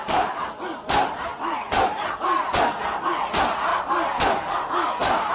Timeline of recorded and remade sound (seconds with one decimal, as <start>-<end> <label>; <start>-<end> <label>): 0.0-5.3 recorded